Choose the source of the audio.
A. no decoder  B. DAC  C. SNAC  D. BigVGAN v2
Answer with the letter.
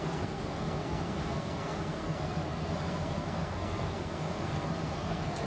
C